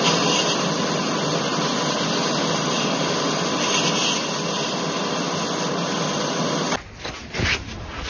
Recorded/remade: recorded